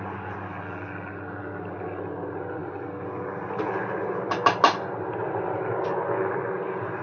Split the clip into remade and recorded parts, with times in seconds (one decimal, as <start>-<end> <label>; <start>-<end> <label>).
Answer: 0.0-7.0 recorded